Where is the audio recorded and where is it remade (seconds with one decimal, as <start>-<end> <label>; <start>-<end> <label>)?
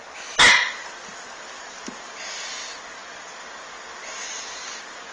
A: 0.0-5.1 recorded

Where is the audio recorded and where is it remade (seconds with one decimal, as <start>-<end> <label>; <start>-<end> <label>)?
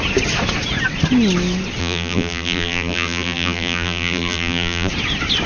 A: 0.0-1.8 recorded; 1.8-4.9 remade; 4.9-5.5 recorded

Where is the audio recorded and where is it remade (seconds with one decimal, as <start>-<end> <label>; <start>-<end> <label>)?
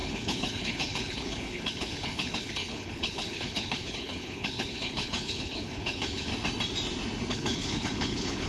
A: 0.0-6.3 remade; 6.3-7.3 recorded; 7.3-8.5 remade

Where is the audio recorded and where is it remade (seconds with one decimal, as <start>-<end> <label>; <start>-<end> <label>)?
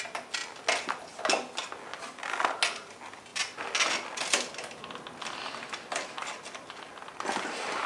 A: 0.0-7.9 recorded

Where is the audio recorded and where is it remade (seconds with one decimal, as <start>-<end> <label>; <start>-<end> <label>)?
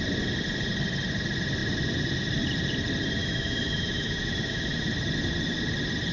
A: 0.0-3.2 recorded; 3.2-4.9 remade; 4.9-6.1 recorded